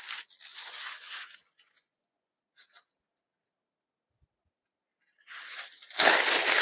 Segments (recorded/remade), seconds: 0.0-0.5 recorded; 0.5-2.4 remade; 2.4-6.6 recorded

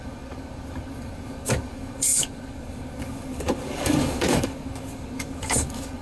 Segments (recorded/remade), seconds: 0.0-6.0 remade

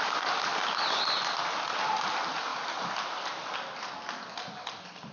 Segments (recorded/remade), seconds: 0.0-5.1 recorded

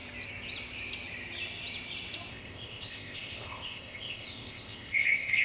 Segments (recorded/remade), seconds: 0.0-2.3 recorded; 2.3-5.4 remade

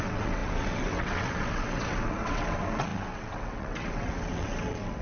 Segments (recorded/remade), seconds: 0.0-5.0 remade